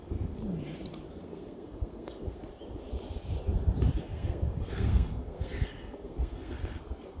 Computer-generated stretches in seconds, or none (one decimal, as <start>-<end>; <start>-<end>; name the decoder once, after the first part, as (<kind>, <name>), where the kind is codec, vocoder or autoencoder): 0.0-0.4 (codec, SNAC); 1.1-2.5; 4.0-7.2